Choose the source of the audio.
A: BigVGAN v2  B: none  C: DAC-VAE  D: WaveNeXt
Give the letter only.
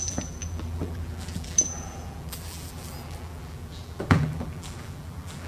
A